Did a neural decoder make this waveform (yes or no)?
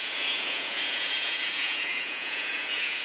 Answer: yes